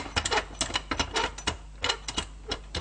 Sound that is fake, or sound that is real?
real